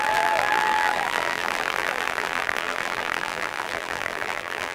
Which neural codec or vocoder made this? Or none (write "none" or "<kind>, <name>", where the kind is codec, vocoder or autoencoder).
vocoder, BigVGAN v2